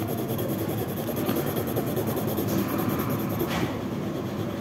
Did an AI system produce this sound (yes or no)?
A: no